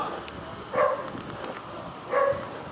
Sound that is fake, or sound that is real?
real